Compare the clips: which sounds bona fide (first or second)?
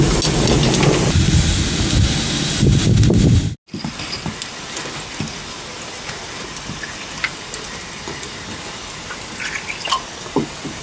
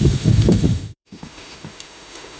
first